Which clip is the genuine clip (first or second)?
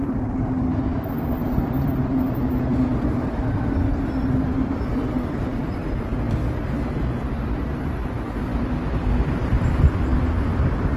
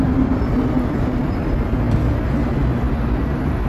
second